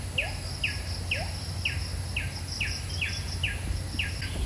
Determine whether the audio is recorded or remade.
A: recorded